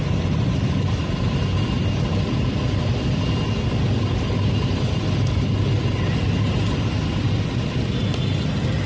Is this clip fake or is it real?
real